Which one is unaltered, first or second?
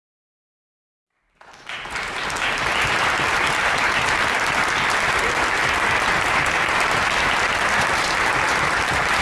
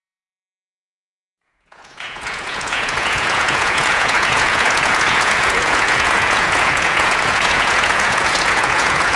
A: first